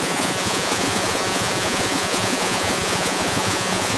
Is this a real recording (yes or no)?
no